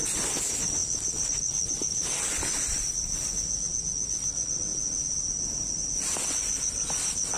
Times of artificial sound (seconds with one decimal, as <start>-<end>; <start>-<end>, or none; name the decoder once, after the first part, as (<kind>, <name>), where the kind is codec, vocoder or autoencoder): none